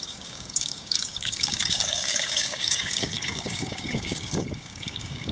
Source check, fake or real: fake